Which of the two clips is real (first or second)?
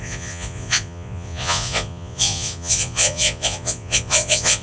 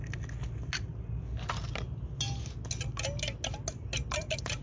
second